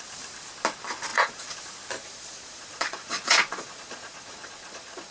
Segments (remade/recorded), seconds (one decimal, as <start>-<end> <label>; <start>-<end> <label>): 0.0-1.1 recorded; 1.1-1.6 remade; 1.6-2.0 recorded; 2.0-5.1 remade